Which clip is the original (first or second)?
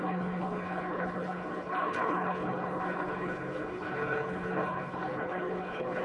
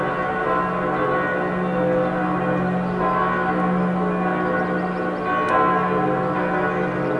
second